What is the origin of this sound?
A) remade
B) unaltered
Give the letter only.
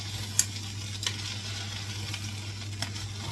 B